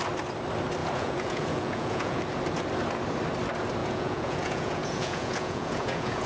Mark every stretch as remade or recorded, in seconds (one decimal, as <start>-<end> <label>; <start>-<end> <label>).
0.0-0.8 recorded; 0.8-2.2 remade; 2.2-3.8 recorded; 3.8-6.3 remade